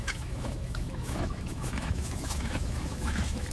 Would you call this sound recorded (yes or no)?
no